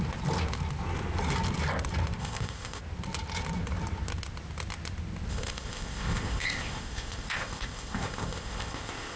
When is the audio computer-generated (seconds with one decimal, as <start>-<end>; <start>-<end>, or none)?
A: 2.2-2.8; 5.3-9.2